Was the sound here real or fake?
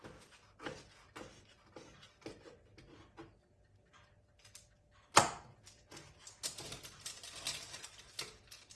real